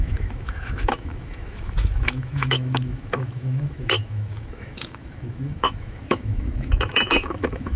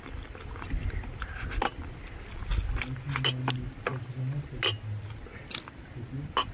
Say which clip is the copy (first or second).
first